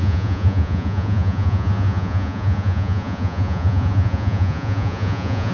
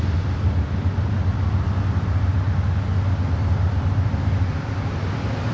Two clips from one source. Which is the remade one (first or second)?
first